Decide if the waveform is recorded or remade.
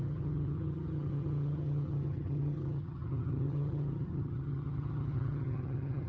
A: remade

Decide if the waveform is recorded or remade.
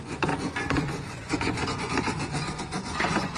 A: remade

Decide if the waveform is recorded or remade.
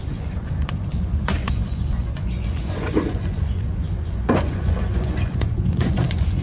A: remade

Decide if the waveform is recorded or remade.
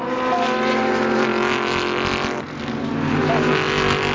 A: recorded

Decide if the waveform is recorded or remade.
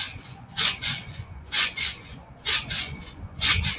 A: remade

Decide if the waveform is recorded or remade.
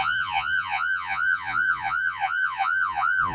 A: remade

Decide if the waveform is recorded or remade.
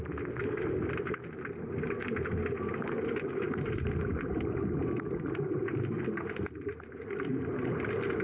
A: recorded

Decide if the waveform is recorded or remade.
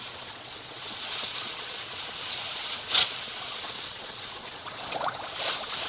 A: remade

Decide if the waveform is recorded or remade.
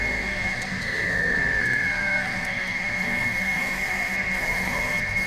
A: remade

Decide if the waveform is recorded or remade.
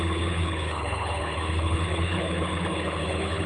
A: remade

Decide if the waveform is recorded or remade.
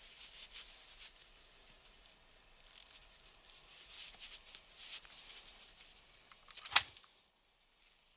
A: recorded